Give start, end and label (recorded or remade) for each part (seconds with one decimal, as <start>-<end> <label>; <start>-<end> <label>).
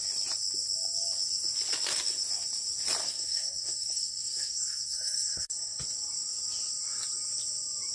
0.0-3.0 recorded; 3.0-5.8 remade; 5.8-7.9 recorded